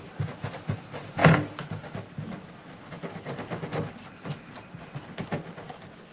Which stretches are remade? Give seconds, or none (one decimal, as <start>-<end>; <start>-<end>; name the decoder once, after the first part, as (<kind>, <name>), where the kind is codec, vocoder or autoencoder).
none